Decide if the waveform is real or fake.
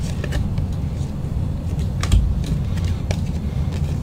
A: real